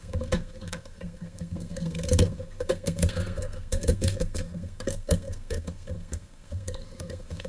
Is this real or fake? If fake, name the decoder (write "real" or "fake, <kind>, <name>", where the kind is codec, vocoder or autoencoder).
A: fake, codec, SNAC